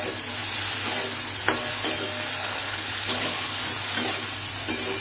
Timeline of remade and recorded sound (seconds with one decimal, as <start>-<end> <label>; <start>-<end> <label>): 0.0-2.4 recorded; 2.4-3.6 remade; 3.6-5.0 recorded